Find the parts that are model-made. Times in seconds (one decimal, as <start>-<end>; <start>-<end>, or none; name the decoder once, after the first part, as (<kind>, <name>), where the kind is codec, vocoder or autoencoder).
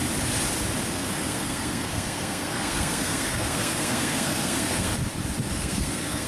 0.9-4.9 (codec, SNAC); 5.5-6.3